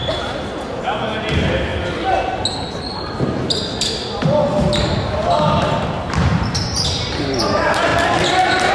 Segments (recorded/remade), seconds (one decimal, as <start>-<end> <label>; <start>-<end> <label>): 0.0-0.7 recorded; 0.7-1.7 remade; 1.7-5.0 recorded; 5.0-7.9 remade; 7.9-8.7 recorded